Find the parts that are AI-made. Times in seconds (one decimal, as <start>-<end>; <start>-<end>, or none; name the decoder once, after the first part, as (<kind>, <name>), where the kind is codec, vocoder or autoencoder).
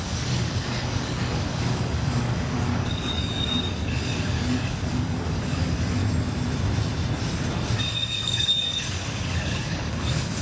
0.0-6.0 (codec, DAC); 7.9-10.4